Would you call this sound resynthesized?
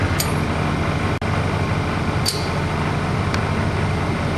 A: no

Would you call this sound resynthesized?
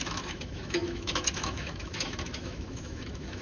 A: yes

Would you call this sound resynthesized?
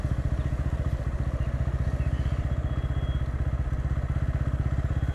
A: no